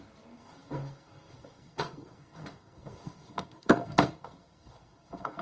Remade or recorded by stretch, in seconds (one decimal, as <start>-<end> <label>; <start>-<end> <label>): 0.0-5.4 remade